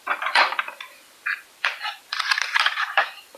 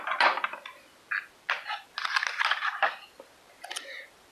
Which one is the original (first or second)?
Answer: second